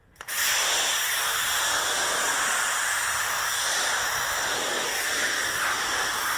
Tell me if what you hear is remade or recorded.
recorded